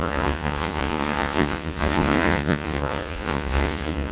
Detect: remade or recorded remade